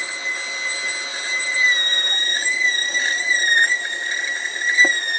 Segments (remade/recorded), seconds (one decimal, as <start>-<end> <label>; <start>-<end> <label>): 0.0-1.1 recorded; 1.1-3.3 remade; 3.3-5.2 recorded